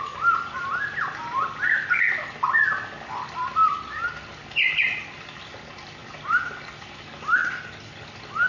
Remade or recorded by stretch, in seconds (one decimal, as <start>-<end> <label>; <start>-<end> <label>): 0.0-8.5 recorded